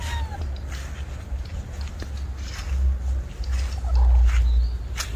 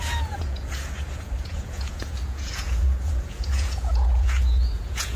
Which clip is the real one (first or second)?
first